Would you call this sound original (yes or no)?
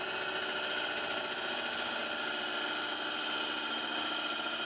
yes